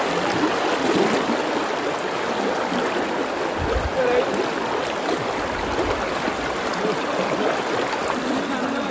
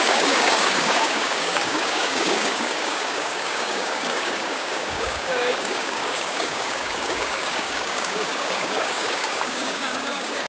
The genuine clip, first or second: first